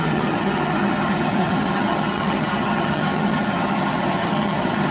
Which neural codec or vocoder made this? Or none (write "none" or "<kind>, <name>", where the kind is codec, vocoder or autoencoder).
vocoder, HiFi-GAN